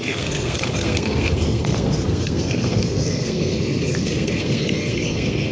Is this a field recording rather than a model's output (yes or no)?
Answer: no